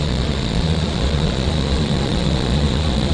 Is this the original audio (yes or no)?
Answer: no